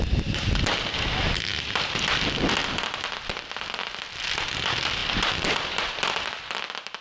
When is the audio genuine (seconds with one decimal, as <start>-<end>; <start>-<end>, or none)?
0.0-7.0